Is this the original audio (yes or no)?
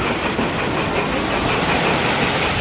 yes